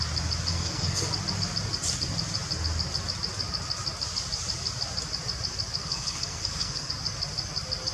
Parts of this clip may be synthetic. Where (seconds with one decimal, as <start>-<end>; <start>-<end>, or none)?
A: 0.5-1.1; 5.8-6.9